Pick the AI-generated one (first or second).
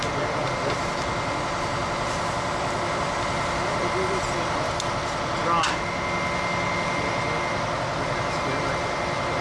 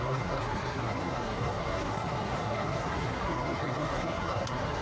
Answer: second